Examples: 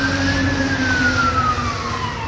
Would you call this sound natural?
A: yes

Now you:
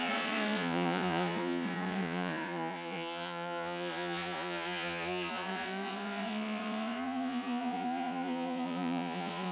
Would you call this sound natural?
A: no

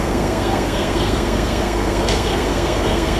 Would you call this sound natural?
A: no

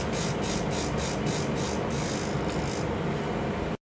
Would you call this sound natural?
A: yes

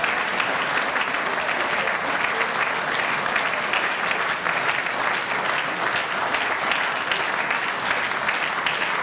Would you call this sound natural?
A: yes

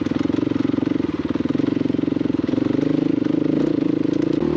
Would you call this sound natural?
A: no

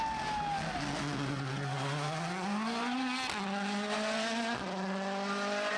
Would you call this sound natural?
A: yes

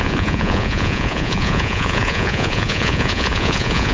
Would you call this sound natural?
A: no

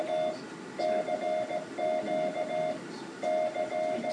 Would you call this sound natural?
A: yes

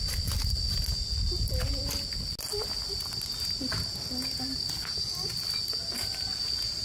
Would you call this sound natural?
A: yes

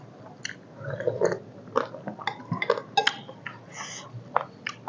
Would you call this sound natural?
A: yes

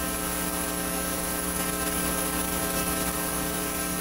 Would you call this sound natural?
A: no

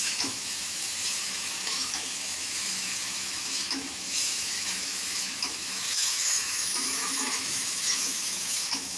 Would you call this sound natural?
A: no